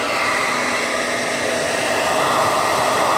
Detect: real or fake real